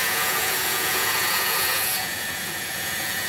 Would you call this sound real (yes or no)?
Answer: no